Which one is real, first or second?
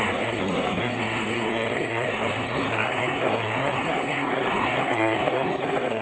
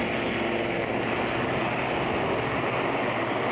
second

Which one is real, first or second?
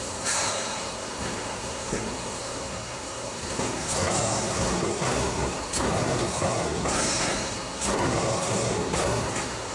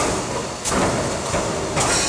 second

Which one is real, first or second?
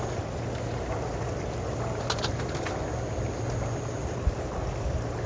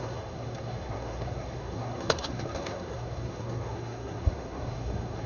first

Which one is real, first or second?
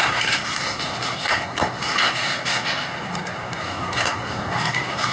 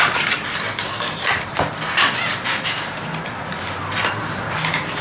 second